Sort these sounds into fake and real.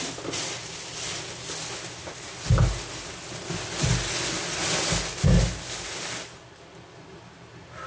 real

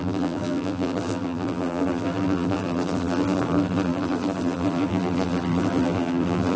fake